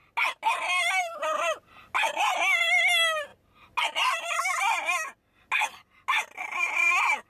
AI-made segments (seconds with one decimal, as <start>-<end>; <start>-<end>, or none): none